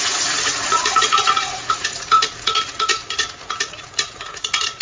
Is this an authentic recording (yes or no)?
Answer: no